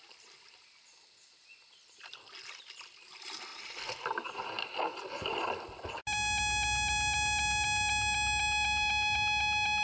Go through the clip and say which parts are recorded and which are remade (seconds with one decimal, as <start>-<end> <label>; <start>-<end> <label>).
0.0-9.8 recorded